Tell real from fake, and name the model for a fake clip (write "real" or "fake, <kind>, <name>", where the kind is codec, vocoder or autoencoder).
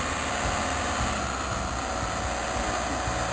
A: real